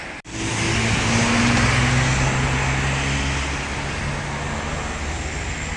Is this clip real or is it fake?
real